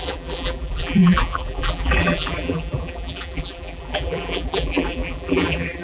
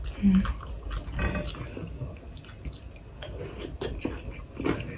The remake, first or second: first